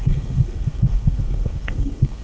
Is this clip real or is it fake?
fake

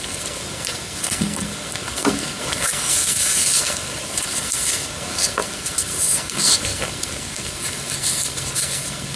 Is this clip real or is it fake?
fake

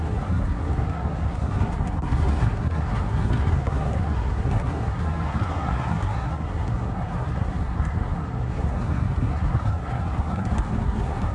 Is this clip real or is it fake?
fake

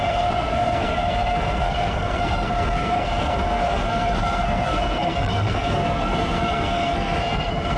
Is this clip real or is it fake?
fake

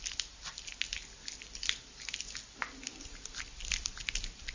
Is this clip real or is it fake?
real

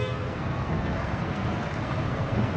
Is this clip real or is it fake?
fake